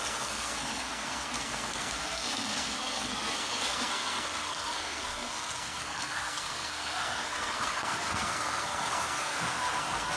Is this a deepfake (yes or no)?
yes